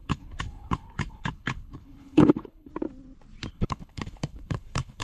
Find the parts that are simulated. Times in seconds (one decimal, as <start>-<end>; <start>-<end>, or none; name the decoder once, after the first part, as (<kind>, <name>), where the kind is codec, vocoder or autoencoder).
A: 0.0-2.7 (codec, HILCodec); 3.5-5.0